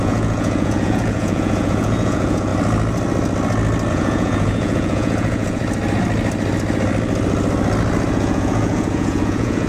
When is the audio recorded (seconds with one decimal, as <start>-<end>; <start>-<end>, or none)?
2.5-3.9; 5.6-8.1